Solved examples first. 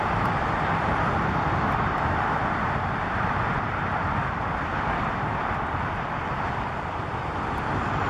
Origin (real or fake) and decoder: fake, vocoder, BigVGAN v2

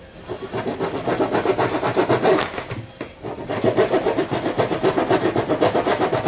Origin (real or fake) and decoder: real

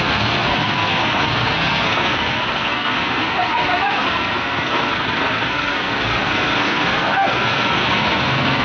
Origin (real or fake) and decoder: fake, codec, SNAC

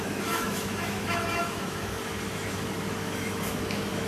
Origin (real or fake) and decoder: fake, autoencoder, DAC-VAE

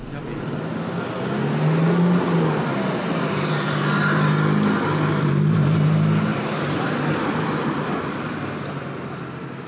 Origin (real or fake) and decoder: real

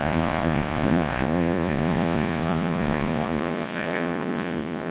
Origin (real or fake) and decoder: fake, vocoder, Vocos